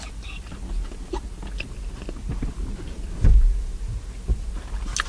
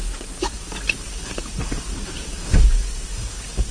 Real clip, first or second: first